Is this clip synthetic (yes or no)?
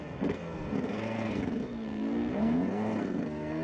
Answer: yes